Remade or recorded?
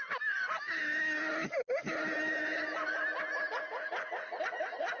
recorded